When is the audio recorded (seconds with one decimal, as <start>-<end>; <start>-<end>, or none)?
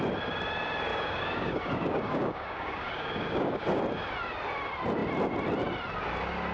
0.0-0.9; 3.8-6.5